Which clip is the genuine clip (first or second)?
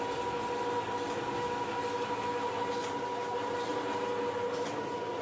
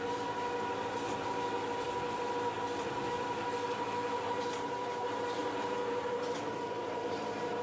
first